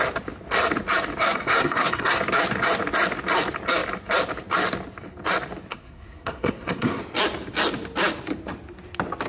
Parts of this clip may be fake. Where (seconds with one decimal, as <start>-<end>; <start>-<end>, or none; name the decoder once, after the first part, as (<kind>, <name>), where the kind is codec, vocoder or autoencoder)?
1.2-2.2 (codec, SNAC); 5.7-7.0